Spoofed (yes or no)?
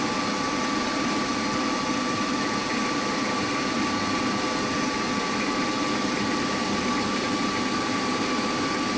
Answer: yes